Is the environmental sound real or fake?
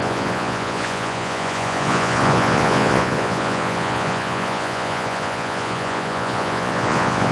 fake